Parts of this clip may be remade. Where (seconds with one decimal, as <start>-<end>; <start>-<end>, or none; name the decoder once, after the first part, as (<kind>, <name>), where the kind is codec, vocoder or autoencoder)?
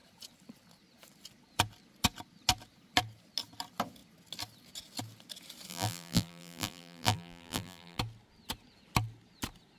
5.7-8.0 (vocoder, BigVGAN v2)